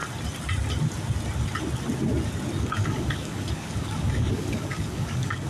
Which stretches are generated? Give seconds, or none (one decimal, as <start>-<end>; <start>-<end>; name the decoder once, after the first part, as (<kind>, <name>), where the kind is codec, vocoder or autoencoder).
2.6-5.5 (codec, DAC)